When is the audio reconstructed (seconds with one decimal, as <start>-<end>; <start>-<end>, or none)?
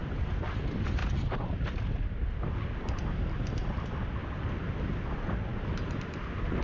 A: 5.5-6.1